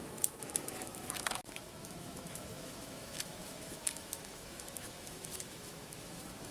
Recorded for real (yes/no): no